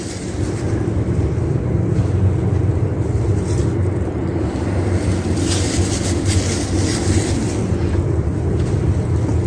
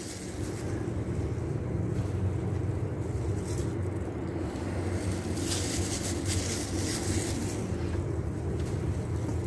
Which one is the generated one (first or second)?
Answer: first